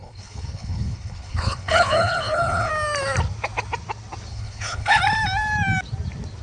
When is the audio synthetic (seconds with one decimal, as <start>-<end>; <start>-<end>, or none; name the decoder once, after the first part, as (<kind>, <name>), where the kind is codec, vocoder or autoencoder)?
0.0-2.7 (codec, HILCodec); 4.3-5.0